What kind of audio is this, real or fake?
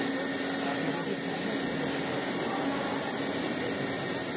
real